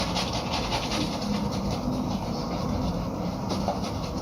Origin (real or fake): real